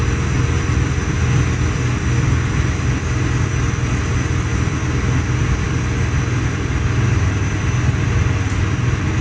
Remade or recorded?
recorded